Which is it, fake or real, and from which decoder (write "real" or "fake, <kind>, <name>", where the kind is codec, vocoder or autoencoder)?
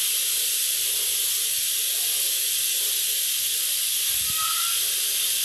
real